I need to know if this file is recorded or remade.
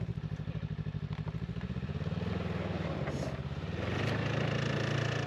recorded